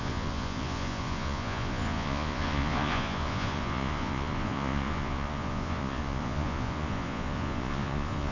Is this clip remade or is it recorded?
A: remade